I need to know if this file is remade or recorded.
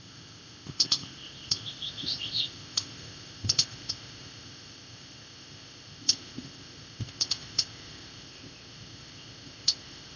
remade